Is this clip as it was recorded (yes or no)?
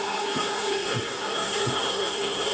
no